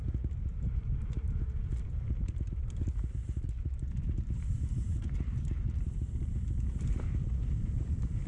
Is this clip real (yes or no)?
no